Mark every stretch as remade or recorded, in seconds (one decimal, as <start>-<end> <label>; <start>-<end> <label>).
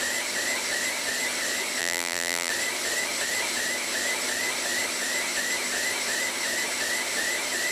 0.0-1.8 recorded; 1.8-2.5 remade; 2.5-7.7 recorded